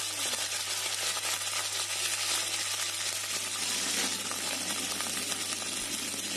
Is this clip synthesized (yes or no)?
no